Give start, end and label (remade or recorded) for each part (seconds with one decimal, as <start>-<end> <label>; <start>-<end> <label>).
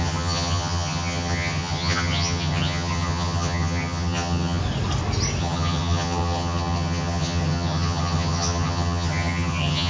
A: 0.0-4.6 remade; 4.6-5.4 recorded; 5.4-9.9 remade